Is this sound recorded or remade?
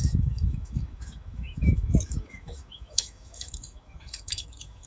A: remade